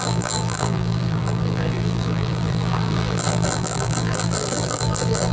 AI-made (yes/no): yes